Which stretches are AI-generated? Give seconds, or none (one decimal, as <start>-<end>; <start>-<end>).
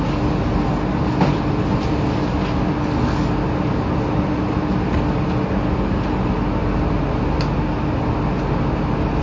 none